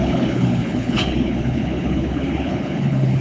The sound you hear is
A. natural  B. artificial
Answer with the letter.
B